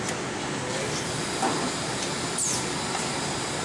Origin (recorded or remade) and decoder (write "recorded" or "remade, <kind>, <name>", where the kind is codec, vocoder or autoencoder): remade, vocoder, BigVGAN v2